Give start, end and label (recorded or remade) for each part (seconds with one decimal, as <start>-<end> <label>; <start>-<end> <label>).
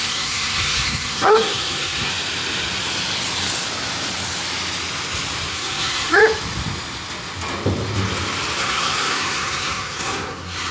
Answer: 0.0-2.1 remade; 2.1-5.5 recorded; 5.5-6.2 remade; 6.2-8.6 recorded; 8.6-10.7 remade